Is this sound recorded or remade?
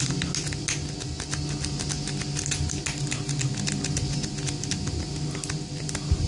recorded